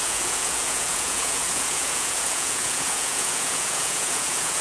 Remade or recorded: remade